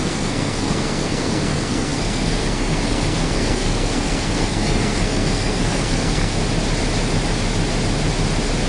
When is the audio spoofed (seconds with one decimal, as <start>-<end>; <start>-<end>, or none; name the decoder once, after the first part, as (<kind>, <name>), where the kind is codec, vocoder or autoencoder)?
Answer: 0.0-6.4 (codec, SNAC)